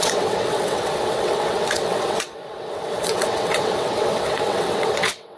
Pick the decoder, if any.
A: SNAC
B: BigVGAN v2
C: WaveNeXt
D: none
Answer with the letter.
C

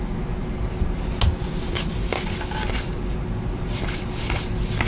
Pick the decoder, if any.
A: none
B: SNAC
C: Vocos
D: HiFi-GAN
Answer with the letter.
A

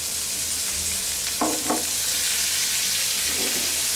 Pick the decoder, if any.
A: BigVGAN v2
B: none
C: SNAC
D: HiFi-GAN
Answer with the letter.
B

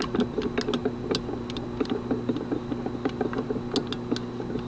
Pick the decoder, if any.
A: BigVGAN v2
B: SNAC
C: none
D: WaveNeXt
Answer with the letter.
C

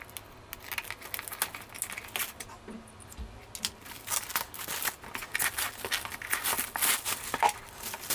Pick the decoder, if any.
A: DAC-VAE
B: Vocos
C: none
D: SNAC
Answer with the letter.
C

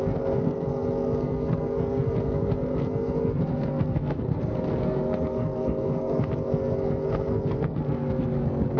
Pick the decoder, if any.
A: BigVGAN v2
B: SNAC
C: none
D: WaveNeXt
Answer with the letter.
B